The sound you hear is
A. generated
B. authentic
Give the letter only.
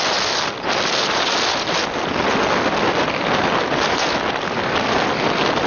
B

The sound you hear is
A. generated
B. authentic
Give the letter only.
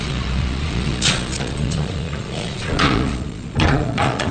A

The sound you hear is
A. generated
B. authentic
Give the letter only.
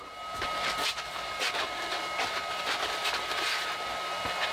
B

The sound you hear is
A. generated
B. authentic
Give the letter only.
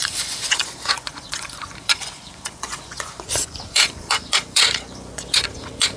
A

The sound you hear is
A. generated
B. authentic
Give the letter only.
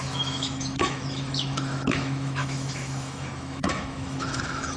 A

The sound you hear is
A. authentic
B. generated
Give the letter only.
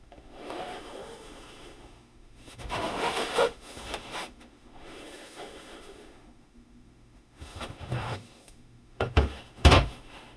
B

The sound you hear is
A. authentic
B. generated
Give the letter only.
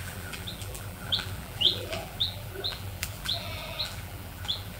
B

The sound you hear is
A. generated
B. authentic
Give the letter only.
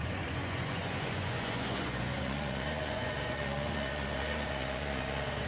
A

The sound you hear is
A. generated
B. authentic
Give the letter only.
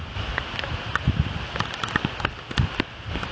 B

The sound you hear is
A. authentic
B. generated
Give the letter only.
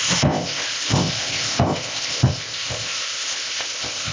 B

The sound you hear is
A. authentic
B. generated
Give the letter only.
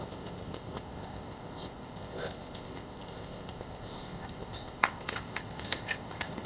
B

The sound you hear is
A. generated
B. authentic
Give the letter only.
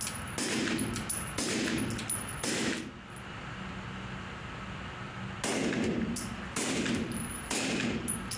B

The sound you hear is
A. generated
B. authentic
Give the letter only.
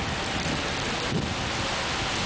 B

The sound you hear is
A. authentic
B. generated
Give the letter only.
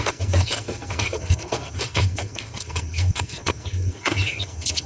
B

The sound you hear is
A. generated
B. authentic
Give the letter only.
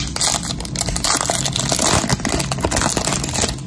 B